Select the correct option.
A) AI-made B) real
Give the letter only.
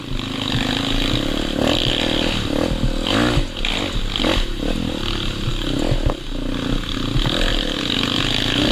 B